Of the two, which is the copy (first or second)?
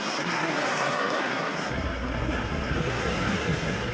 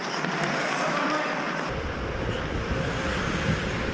first